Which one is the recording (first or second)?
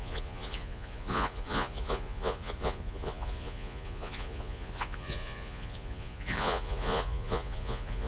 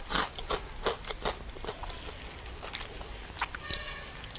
second